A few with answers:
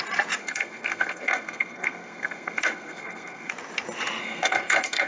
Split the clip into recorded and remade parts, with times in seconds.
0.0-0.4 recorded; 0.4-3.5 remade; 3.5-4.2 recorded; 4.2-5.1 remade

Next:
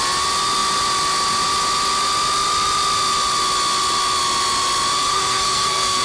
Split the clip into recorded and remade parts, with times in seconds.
0.0-5.1 recorded; 5.1-6.0 remade